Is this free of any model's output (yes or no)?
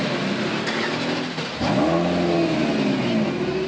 yes